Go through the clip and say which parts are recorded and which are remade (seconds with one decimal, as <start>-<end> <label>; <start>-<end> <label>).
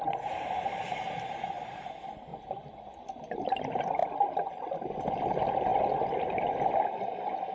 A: 0.0-2.3 recorded; 2.3-3.0 remade; 3.0-4.0 recorded; 4.0-4.7 remade; 4.7-7.5 recorded